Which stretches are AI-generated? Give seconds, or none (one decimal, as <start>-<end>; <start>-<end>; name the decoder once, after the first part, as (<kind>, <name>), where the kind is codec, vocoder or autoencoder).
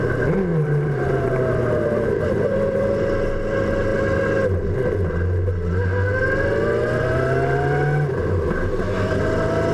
0.5-2.8 (vocoder, BigVGAN v2)